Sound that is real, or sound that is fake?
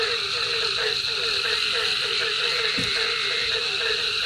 real